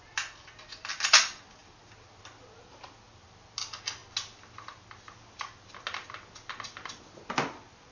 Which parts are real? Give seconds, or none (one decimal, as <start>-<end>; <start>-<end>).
0.0-7.9